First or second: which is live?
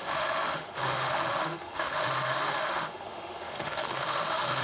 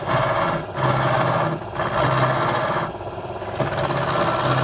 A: second